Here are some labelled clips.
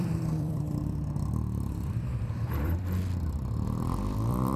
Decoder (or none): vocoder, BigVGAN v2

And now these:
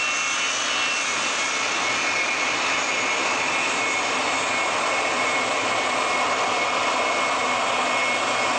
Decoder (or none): none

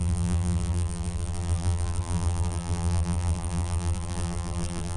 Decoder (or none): vocoder, BigVGAN v2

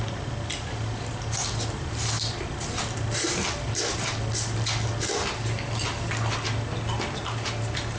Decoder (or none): none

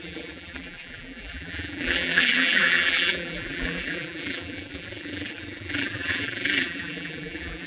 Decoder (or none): vocoder, BigVGAN v2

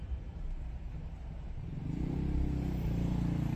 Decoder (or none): vocoder, BigVGAN v2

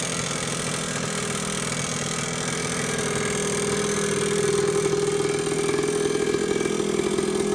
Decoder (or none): none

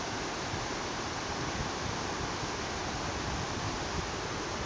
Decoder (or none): none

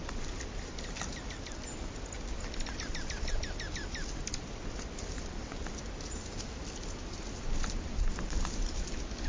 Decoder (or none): none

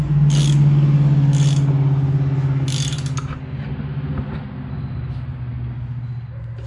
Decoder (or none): none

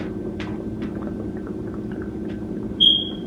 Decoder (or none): vocoder, BigVGAN v2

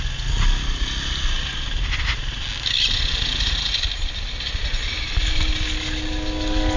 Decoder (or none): none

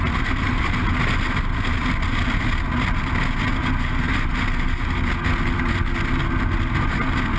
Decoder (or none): none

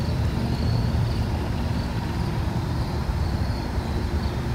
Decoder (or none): vocoder, BigVGAN v2